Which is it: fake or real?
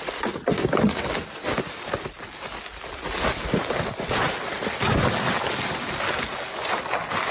real